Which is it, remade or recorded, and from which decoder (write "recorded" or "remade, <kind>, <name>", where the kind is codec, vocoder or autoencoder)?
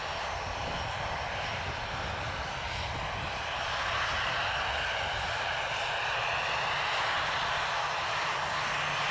recorded